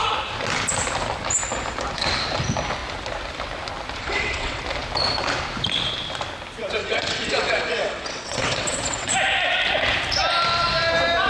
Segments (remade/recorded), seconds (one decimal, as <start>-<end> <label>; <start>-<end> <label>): 0.0-4.0 recorded; 4.0-4.6 remade; 4.6-6.8 recorded; 6.8-9.1 remade; 9.1-11.3 recorded